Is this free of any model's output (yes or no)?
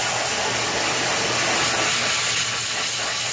yes